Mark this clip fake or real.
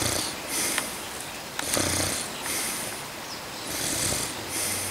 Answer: real